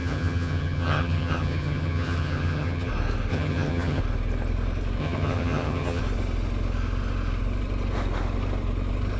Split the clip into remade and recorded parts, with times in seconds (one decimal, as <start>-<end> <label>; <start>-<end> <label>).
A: 0.0-2.9 remade; 2.9-3.3 recorded; 3.3-4.0 remade; 4.0-5.0 recorded; 5.0-6.0 remade; 6.0-9.2 recorded

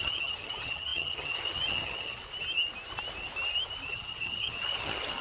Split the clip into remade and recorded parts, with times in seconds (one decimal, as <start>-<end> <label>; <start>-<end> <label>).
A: 0.0-2.2 remade; 2.2-3.9 recorded; 3.9-5.2 remade

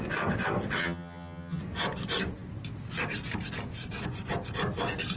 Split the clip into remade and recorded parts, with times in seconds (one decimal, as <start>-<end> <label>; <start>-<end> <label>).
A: 0.0-0.8 recorded; 0.8-1.6 remade; 1.6-5.2 recorded